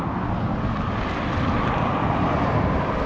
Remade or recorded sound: recorded